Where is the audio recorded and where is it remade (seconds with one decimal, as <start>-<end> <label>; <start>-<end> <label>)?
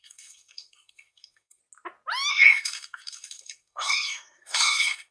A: 0.0-1.6 remade; 1.6-2.3 recorded; 2.3-5.1 remade